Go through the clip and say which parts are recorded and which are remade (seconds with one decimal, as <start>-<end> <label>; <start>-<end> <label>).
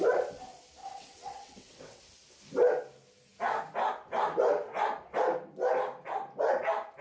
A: 0.0-0.8 recorded; 0.8-2.0 remade; 2.0-7.0 recorded